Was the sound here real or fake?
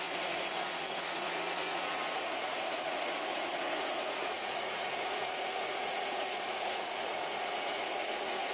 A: fake